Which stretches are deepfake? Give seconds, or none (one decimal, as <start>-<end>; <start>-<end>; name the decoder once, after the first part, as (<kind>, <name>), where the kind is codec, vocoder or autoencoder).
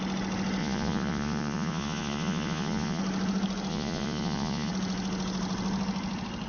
0.6-3.0 (vocoder, Vocos); 3.7-4.7